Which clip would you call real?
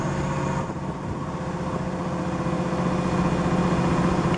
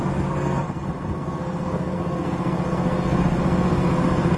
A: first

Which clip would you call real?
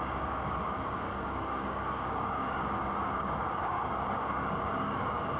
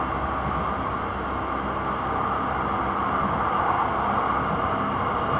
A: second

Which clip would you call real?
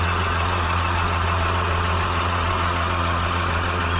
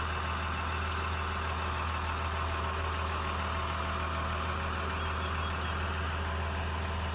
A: second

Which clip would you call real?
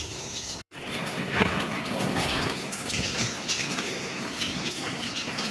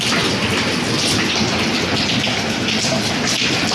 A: second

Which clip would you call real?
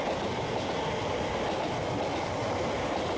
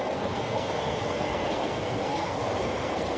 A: first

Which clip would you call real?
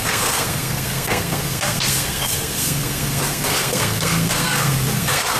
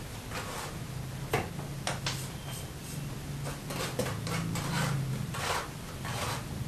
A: second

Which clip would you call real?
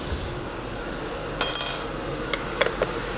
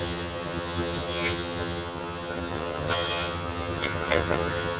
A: first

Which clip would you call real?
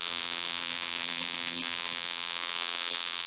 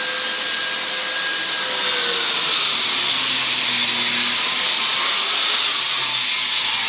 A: second